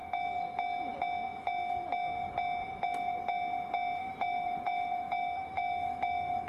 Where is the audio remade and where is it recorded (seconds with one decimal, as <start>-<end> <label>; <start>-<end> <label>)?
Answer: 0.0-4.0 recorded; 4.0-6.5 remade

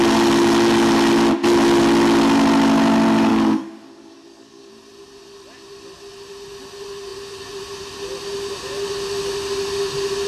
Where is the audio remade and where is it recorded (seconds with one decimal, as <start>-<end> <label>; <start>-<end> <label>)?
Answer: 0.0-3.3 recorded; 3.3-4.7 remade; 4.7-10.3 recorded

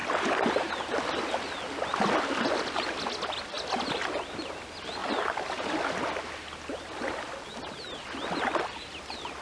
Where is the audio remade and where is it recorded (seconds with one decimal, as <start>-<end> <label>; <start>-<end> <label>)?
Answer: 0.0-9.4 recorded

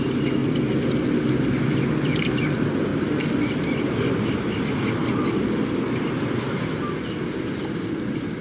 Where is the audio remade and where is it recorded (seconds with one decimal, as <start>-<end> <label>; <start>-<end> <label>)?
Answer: 0.0-8.4 recorded